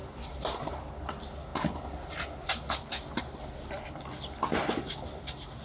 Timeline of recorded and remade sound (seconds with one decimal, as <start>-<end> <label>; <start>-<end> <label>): 0.0-5.6 recorded

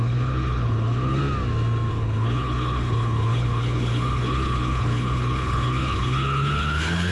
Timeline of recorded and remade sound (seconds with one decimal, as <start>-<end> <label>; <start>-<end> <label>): 0.0-1.2 remade; 1.2-1.9 recorded; 1.9-7.1 remade

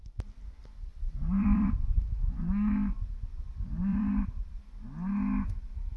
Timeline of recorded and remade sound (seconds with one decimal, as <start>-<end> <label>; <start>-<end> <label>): 0.0-0.9 recorded; 0.9-1.7 remade; 1.7-3.9 recorded; 3.9-4.6 remade; 4.6-6.0 recorded

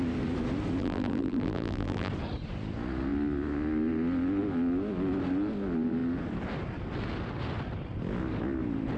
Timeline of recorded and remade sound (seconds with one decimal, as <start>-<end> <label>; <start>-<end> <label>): 0.0-0.8 recorded; 0.8-2.1 remade; 2.1-9.0 recorded

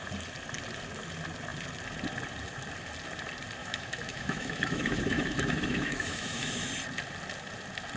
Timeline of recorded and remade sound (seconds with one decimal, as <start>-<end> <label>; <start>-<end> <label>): 0.0-3.6 recorded; 3.6-6.7 remade; 6.7-8.0 recorded

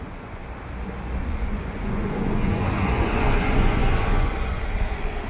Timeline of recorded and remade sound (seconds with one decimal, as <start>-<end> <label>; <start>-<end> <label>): 0.0-0.4 remade; 0.4-1.2 recorded; 1.2-5.3 remade

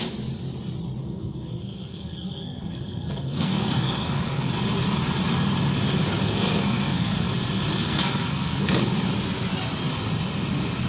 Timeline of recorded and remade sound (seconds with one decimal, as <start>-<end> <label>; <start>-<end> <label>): 0.0-1.0 recorded; 1.0-4.5 remade; 4.5-6.2 recorded; 6.2-7.3 remade; 7.3-7.7 recorded; 7.7-8.8 remade; 8.8-10.9 recorded